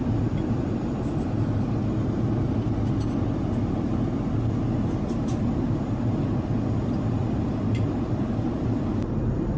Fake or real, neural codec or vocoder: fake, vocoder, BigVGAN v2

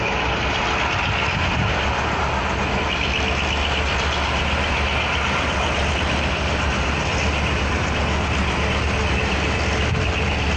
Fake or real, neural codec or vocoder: real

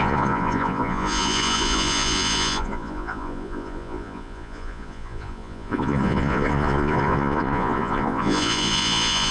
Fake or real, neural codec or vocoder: fake, vocoder, Vocos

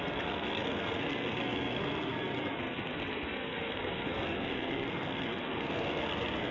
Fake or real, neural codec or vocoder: fake, codec, SNAC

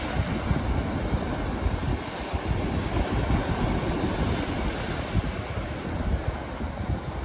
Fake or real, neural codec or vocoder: real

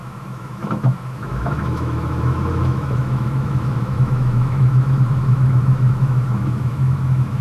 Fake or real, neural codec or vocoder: fake, autoencoder, DAC-VAE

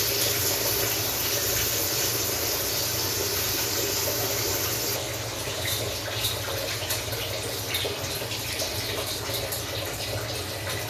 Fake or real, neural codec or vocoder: real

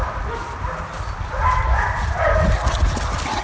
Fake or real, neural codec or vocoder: fake, vocoder, BigVGAN v2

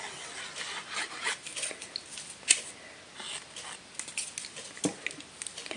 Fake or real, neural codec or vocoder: real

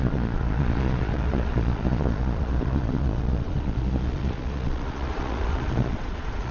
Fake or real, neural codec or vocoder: fake, vocoder, Vocos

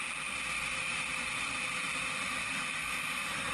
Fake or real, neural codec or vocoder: real